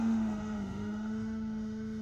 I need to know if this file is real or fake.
fake